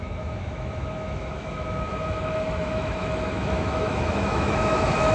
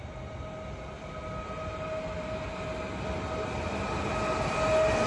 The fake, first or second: first